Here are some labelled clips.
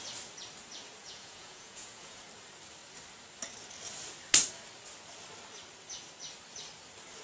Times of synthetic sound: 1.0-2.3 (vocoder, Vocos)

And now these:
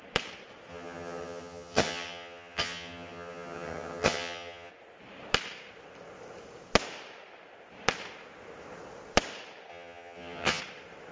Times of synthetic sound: 0.7-4.7 (vocoder, HiFi-GAN); 9.7-10.6

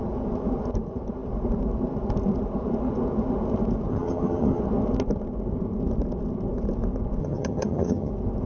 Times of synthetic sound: 3.9-4.6 (vocoder, HiFi-GAN); 7.2-8.1

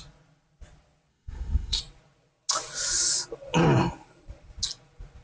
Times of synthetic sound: 1.1-1.8 (codec, SNAC)

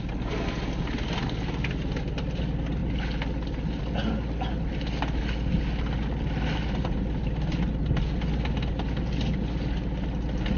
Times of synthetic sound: none

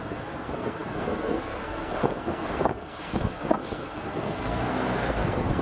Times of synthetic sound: 0.0-5.6 (codec, SNAC)

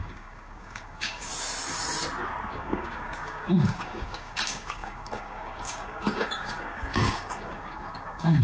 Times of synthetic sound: 0.0-1.3 (codec, DAC); 2.5-8.4